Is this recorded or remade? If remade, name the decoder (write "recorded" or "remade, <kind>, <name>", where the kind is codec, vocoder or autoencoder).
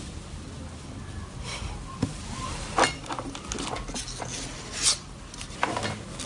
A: recorded